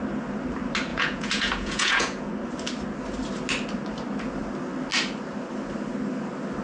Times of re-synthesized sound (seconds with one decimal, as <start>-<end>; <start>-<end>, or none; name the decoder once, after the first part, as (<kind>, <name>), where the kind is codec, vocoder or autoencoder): 0.9-2.3 (vocoder, Vocos)